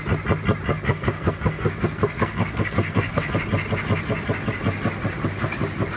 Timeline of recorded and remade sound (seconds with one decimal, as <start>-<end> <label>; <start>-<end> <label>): 0.0-0.7 recorded; 0.7-3.3 remade; 3.3-6.0 recorded